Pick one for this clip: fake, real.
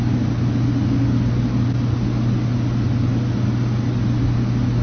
real